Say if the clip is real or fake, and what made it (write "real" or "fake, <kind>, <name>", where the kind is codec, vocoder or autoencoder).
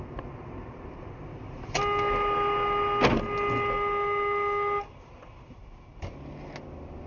real